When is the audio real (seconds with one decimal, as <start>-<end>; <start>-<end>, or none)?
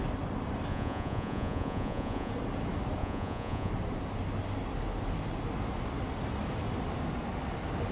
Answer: 0.0-0.7; 2.3-3.0; 3.7-7.9